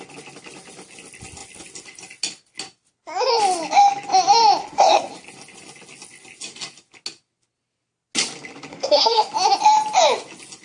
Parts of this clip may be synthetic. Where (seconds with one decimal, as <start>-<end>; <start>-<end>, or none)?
4.6-5.1; 8.7-9.3